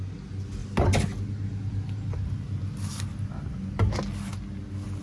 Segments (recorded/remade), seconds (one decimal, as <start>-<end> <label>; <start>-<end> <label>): 0.0-5.0 recorded